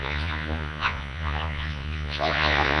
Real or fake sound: fake